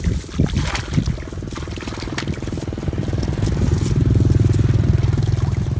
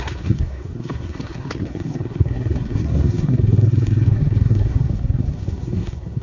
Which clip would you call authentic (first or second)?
first